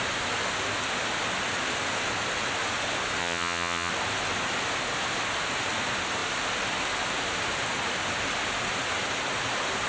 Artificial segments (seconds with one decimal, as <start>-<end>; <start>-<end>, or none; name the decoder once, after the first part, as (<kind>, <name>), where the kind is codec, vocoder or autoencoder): 3.2-3.9 (vocoder, HiFi-GAN)